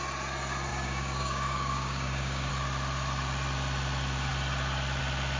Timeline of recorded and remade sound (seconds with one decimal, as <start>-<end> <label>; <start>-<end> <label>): 0.0-0.7 recorded; 0.7-2.5 remade; 2.5-5.4 recorded